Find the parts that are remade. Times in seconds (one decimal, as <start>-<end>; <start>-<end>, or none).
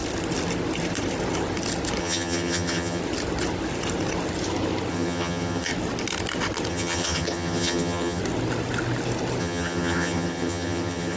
2.0-3.0; 4.9-5.7; 6.7-8.2; 9.4-11.2